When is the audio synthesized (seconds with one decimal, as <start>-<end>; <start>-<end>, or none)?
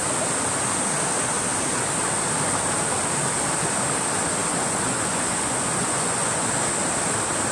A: 4.5-6.5